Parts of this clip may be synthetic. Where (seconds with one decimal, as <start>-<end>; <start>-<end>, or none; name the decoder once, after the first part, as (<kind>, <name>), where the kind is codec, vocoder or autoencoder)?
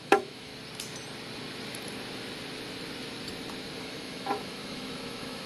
0.0-0.5 (autoencoder, DAC-VAE); 3.8-5.5